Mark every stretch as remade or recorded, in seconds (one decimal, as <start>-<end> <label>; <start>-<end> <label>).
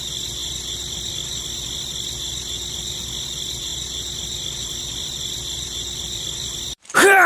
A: 0.0-3.7 remade; 3.7-4.6 recorded; 4.6-7.3 remade